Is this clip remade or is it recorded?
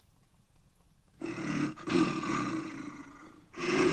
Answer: remade